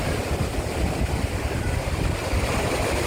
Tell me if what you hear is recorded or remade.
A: remade